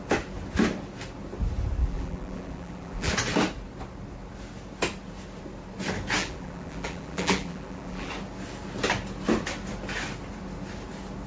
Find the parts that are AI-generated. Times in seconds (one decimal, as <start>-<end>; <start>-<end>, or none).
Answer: 1.8-3.1; 6.2-8.1